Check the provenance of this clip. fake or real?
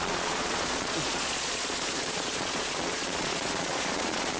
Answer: fake